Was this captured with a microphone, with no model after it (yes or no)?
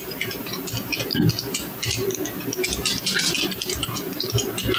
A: no